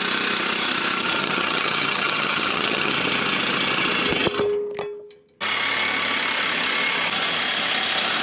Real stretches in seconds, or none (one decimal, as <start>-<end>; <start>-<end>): 0.0-1.2; 2.9-8.2